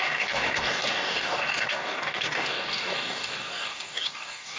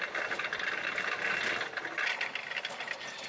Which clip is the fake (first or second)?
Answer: first